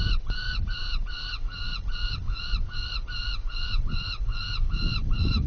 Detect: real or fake fake